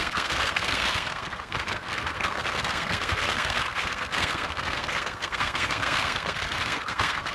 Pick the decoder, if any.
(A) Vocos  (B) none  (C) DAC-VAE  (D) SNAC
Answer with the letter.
D